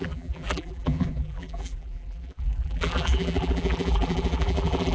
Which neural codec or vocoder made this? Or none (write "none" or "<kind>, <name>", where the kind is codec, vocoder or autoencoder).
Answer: vocoder, BigVGAN v2